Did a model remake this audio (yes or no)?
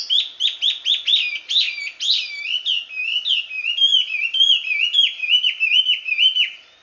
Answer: no